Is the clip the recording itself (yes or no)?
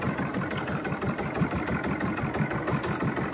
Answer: yes